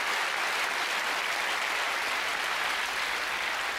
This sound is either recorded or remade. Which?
recorded